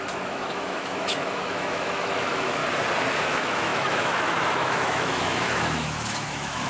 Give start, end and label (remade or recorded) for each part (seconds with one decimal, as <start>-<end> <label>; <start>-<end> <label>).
0.0-2.6 remade; 2.6-3.2 recorded; 3.2-6.7 remade